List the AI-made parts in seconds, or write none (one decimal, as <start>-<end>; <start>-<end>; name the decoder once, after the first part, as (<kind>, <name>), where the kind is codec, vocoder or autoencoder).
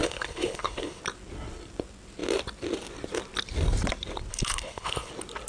0.0-1.0 (codec, HILCodec); 4.3-5.1